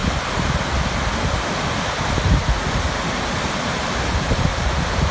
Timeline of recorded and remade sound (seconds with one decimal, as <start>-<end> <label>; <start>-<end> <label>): 0.0-3.1 recorded; 3.1-5.1 remade